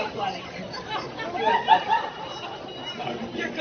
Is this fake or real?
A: real